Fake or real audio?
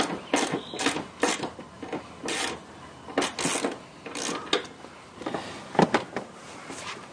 real